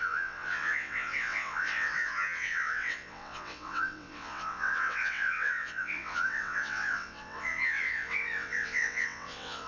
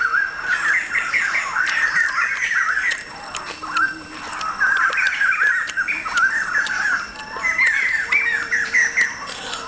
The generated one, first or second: first